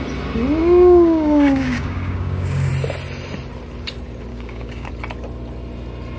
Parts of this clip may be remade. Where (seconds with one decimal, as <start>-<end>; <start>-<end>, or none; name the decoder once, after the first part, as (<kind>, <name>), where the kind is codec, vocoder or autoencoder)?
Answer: 0.6-2.7 (codec, DAC); 4.3-4.9